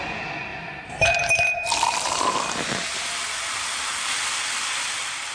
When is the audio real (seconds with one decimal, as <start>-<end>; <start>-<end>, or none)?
0.0-0.5; 3.0-5.3